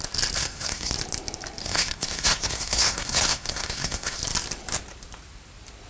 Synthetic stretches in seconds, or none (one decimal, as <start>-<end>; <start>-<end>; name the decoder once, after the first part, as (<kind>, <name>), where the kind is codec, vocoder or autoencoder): 0.4-0.9 (codec, SNAC); 1.6-4.2